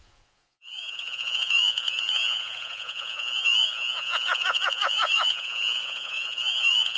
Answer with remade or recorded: remade